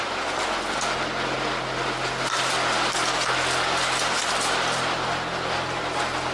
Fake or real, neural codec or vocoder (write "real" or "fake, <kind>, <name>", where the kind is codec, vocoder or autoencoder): real